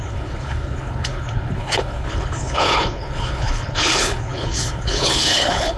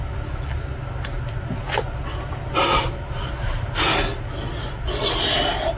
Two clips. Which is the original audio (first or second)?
second